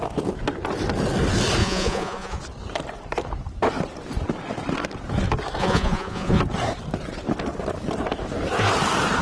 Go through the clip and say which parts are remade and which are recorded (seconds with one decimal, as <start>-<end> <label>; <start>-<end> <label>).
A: 0.0-1.6 recorded; 1.6-2.4 remade; 2.4-5.6 recorded; 5.6-6.4 remade; 6.4-9.2 recorded